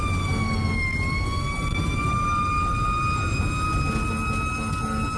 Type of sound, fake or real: real